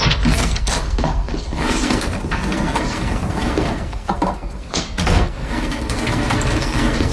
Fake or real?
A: fake